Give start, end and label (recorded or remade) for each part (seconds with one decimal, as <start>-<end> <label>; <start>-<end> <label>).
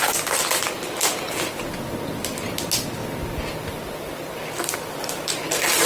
0.0-5.9 recorded